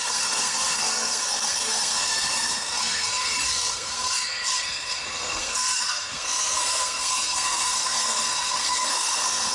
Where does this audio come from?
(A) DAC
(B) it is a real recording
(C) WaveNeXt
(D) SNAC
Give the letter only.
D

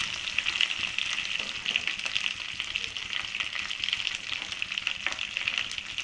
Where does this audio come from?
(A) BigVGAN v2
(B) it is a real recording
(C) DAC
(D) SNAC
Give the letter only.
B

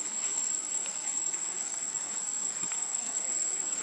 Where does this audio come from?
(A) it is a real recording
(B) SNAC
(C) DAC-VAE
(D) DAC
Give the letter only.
B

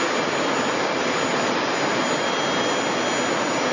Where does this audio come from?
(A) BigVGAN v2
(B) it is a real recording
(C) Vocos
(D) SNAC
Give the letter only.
B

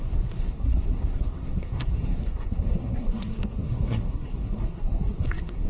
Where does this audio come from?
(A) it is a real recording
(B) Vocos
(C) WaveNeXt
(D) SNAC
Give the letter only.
D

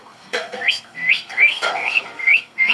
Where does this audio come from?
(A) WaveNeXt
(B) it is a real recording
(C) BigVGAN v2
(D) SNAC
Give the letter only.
D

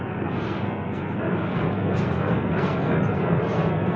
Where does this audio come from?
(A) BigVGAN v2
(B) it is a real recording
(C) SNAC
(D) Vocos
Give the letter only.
C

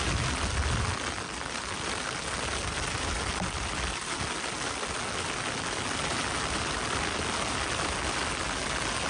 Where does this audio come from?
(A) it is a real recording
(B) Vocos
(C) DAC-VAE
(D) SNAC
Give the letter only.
A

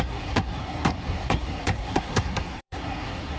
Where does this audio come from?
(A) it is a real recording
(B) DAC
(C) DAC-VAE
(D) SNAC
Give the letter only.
D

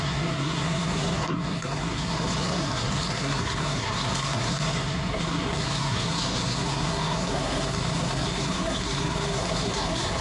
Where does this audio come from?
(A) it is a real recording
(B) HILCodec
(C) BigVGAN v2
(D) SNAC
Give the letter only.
D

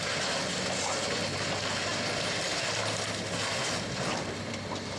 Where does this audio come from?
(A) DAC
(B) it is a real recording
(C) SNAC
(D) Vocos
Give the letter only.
B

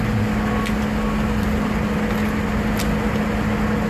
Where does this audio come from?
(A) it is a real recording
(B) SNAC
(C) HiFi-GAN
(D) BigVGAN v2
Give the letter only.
A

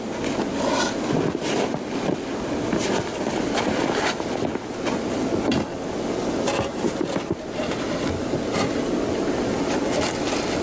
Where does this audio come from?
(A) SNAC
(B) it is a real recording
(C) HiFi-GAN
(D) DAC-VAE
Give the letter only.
B